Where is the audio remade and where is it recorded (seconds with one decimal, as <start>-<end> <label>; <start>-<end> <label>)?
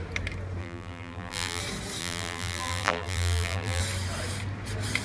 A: 0.0-0.6 recorded; 0.6-1.6 remade; 1.6-2.0 recorded; 2.0-3.8 remade; 3.8-5.0 recorded